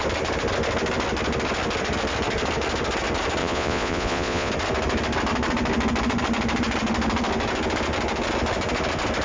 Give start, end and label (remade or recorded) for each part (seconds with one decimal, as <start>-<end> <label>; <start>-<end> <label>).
0.0-3.4 recorded; 3.4-4.5 remade; 4.5-9.2 recorded